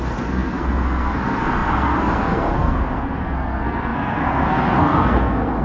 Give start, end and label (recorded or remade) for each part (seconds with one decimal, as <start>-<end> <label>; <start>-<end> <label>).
0.0-5.6 remade